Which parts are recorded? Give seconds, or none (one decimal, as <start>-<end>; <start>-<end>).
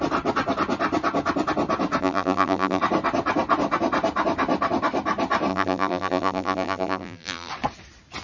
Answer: 0.0-2.0; 2.8-5.5; 7.5-8.2